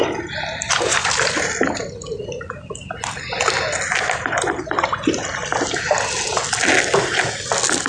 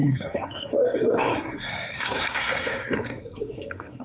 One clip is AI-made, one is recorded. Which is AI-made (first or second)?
second